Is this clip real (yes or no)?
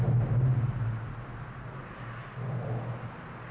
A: yes